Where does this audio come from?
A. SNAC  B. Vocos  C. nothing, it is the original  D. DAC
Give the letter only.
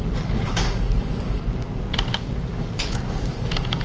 D